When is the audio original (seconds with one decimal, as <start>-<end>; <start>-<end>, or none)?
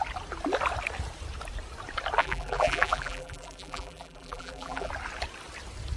0.0-2.2; 4.9-6.0